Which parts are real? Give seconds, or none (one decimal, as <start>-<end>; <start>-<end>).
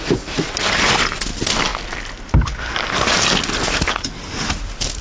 0.0-5.0